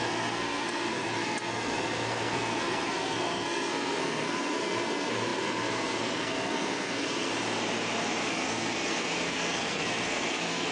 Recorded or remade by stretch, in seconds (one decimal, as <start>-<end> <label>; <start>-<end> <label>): 0.0-7.3 remade; 7.3-8.3 recorded; 8.3-10.7 remade